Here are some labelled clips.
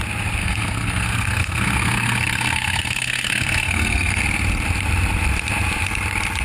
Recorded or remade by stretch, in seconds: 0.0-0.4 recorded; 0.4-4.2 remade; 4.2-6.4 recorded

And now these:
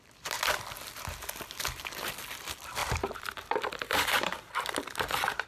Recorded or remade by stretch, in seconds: 0.0-2.8 recorded; 2.8-4.4 remade; 4.4-5.5 recorded

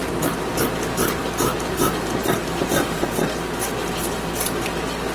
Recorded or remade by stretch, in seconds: 0.0-5.1 recorded

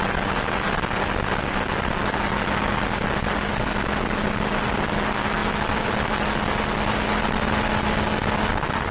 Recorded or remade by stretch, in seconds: 0.0-8.9 recorded

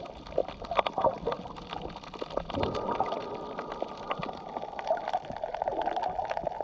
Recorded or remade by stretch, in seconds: 0.0-6.6 recorded

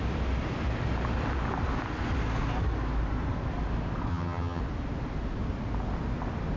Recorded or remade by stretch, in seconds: 0.0-4.1 recorded; 4.1-4.6 remade; 4.6-6.6 recorded